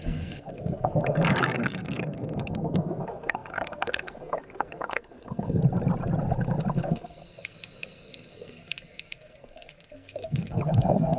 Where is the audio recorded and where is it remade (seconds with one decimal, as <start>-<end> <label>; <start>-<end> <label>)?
0.0-5.6 remade; 5.6-6.7 recorded; 6.7-11.2 remade